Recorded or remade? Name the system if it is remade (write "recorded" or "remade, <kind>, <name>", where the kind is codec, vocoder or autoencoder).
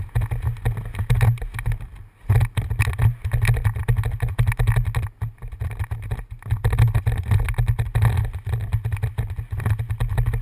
recorded